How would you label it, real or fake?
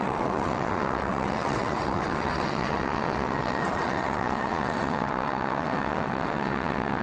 fake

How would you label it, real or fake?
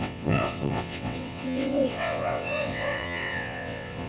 fake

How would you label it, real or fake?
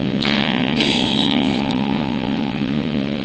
fake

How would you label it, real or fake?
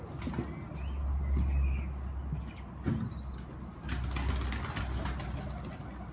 real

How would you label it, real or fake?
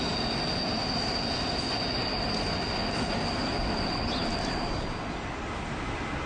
real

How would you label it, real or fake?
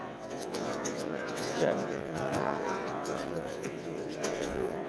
fake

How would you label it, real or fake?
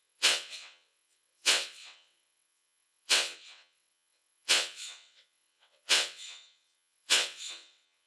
fake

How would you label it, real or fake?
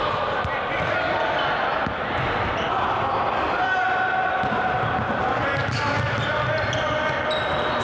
real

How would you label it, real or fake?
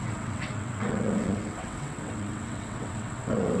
fake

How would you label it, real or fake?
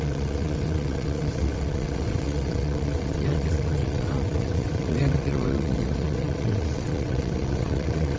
fake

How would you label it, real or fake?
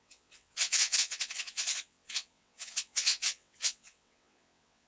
fake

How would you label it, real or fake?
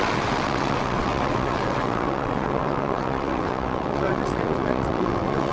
fake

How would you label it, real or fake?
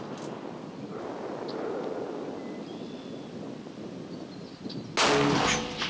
real